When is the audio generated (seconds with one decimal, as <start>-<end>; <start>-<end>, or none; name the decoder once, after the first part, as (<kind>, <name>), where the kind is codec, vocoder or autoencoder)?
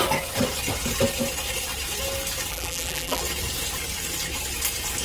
2.5-3.2 (vocoder, BigVGAN v2)